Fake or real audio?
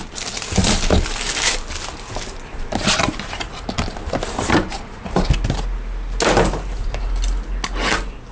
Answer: real